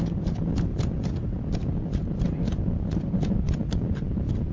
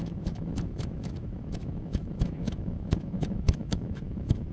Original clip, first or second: first